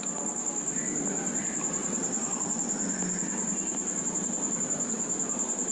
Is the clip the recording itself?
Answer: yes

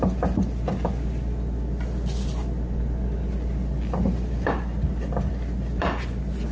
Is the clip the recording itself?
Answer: yes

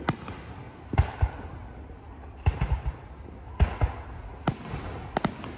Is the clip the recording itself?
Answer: yes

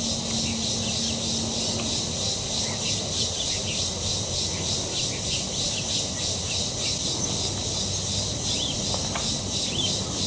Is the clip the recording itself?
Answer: yes